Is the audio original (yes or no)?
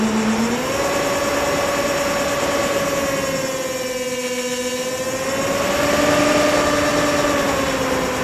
yes